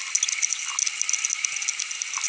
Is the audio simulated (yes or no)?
no